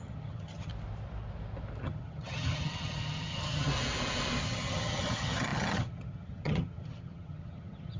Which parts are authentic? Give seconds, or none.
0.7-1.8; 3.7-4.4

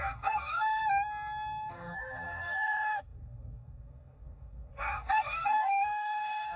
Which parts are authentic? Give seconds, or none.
0.8-1.7

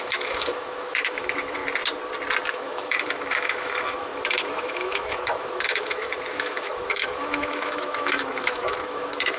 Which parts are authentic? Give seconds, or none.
1.6-2.5

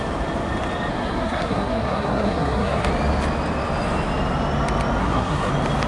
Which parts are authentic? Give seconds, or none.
0.0-0.9; 2.9-5.0; 5.5-5.9

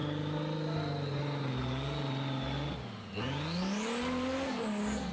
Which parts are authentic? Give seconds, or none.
0.0-5.1

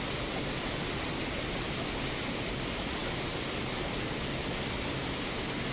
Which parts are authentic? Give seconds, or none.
0.0-5.7